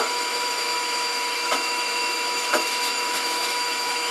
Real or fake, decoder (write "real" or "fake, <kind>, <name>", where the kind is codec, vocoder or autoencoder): fake, autoencoder, DAC-VAE